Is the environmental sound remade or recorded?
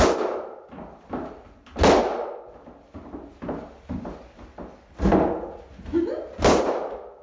recorded